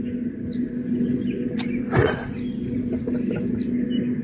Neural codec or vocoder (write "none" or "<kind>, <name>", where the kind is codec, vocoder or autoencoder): none